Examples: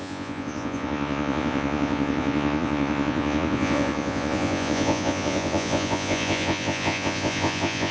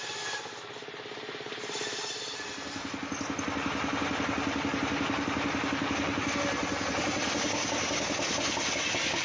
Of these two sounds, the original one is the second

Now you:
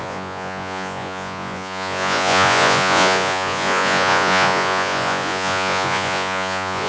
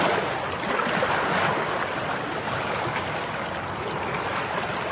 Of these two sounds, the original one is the second